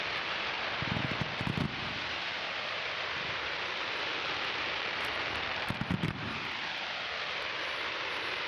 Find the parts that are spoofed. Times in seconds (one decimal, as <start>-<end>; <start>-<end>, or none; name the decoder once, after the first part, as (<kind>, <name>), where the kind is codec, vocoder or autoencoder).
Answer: 0.0-8.5 (vocoder, BigVGAN v2)